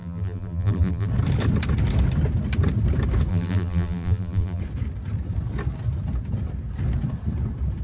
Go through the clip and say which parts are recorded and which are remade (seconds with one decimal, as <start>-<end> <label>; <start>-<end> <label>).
0.0-1.1 remade; 1.1-3.3 recorded; 3.3-4.6 remade; 4.6-7.8 recorded